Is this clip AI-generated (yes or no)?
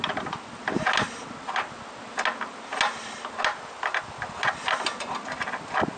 no